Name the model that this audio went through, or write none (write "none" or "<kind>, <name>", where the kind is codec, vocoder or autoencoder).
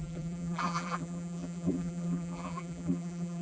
vocoder, BigVGAN v2